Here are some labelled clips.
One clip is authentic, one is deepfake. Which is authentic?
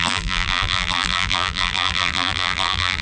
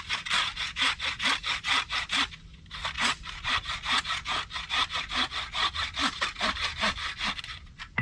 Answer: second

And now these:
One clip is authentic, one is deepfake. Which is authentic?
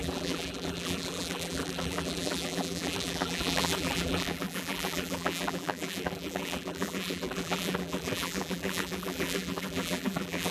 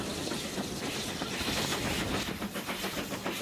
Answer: second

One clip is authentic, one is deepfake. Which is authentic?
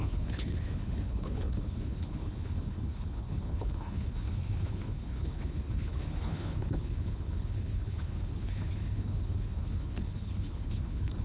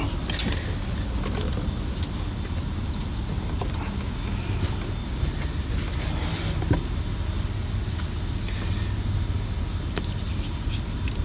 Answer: second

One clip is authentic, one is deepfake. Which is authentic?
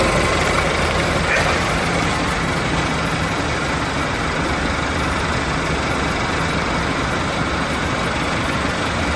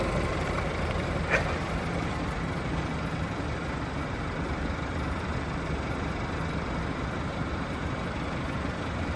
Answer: first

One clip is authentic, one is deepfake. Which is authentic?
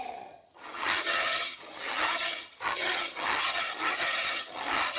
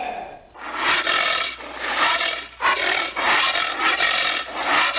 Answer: second